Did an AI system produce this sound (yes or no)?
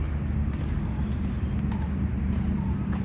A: no